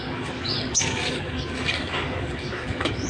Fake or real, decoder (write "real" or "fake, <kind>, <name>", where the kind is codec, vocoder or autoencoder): fake, codec, DAC